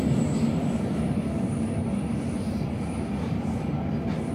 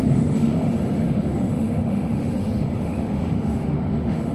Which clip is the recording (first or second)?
first